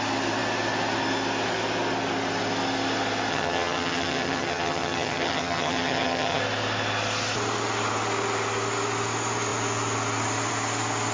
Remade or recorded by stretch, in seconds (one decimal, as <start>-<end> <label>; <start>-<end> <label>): 0.0-3.3 recorded; 3.3-6.4 remade; 6.4-11.1 recorded